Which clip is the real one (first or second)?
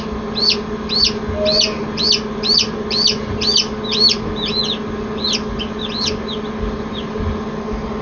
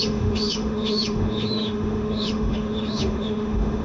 first